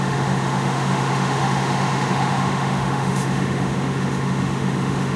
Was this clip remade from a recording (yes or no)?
yes